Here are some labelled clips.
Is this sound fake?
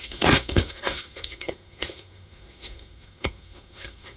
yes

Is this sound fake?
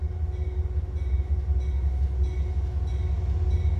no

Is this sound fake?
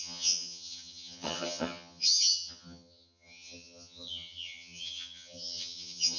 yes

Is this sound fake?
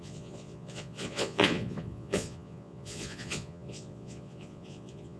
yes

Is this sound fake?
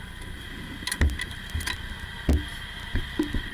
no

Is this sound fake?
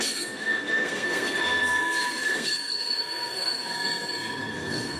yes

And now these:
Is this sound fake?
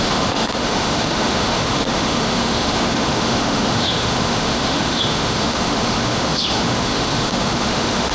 yes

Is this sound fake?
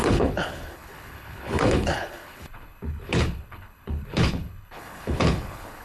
yes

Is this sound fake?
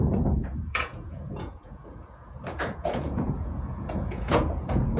yes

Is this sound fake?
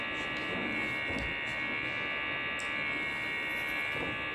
no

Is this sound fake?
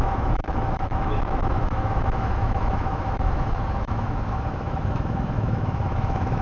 yes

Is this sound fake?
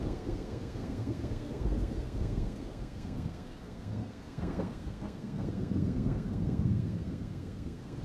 yes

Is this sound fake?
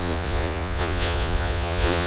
yes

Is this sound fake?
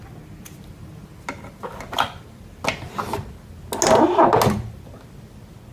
no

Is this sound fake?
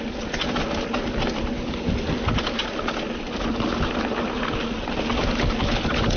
no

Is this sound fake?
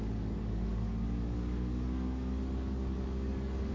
yes